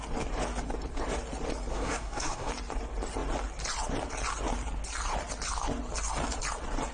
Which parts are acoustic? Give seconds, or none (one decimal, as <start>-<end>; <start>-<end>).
0.0-1.7; 2.5-6.9